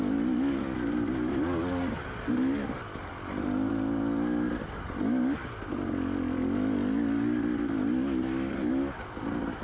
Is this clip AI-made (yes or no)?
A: no